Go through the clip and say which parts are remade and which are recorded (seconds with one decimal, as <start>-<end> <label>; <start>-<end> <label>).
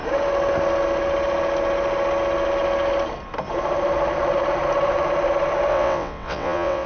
0.0-5.7 recorded; 5.7-6.9 remade